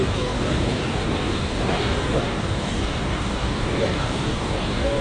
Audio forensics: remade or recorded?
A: remade